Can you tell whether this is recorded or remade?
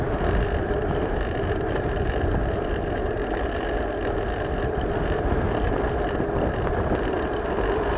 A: recorded